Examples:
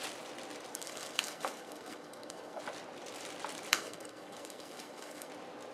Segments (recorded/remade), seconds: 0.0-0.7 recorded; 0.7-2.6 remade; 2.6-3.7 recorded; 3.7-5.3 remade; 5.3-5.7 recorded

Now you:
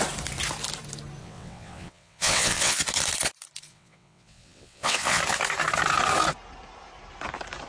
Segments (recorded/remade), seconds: 0.0-1.2 recorded; 1.2-2.8 remade; 2.8-3.7 recorded; 3.7-5.2 remade; 5.2-7.7 recorded

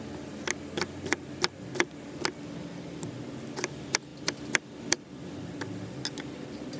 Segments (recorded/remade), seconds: 0.0-6.8 recorded